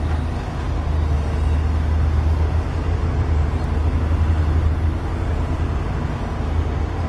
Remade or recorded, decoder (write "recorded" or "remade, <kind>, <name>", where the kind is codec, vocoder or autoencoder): recorded